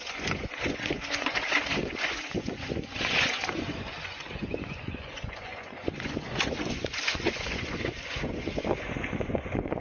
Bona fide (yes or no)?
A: no